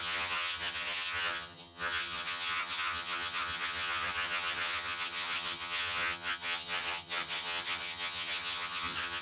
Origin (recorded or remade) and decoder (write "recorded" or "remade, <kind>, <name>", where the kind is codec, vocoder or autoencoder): remade, vocoder, HiFi-GAN